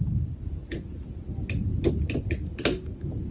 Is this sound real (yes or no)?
yes